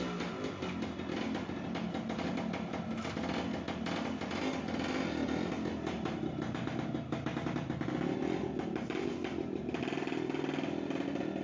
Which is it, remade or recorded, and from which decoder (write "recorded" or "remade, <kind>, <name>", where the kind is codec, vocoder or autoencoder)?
recorded